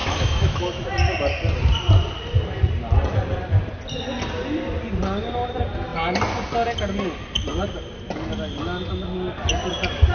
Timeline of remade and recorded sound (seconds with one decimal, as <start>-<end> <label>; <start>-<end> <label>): 0.0-0.8 remade; 0.8-10.1 recorded